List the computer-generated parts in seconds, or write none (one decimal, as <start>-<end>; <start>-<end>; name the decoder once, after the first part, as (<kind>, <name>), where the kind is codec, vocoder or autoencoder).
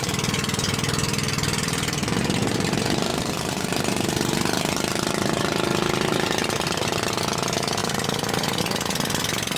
3.1-3.7 (vocoder, BigVGAN v2)